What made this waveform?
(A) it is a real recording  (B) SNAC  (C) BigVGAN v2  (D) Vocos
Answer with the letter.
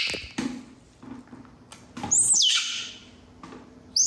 A